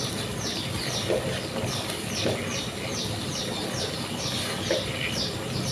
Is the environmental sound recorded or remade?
recorded